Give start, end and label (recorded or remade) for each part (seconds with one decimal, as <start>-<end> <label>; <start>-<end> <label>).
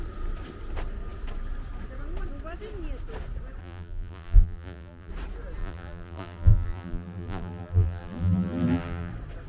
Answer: 0.0-3.6 recorded; 3.6-5.1 remade; 5.1-5.6 recorded; 5.6-9.1 remade; 9.1-9.5 recorded